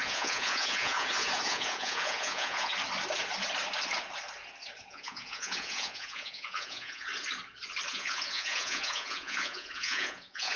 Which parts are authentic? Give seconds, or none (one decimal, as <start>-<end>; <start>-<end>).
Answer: 2.7-4.8; 7.1-7.9